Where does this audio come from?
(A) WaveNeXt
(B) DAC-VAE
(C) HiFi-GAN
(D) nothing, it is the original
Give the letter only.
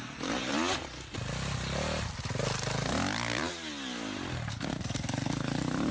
D